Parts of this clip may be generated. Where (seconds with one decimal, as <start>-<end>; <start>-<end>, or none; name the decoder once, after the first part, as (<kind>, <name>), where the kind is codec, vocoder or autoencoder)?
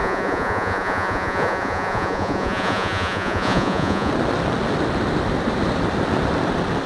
0.0-4.1 (vocoder, Vocos)